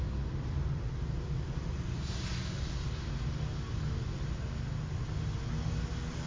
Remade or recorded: recorded